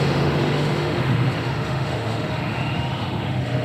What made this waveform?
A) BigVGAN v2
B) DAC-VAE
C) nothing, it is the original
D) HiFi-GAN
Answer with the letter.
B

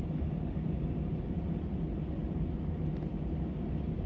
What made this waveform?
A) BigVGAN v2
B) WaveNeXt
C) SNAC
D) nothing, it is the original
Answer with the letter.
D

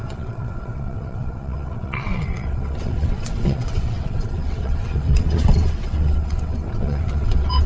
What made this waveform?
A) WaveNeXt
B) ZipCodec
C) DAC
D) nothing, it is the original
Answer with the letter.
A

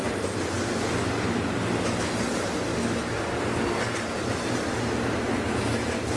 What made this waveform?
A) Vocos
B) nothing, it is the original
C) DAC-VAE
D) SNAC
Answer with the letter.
B